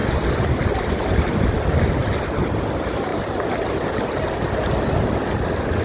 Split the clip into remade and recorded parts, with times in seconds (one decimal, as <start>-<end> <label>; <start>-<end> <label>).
0.0-5.8 recorded